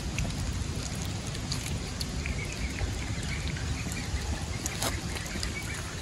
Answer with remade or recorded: recorded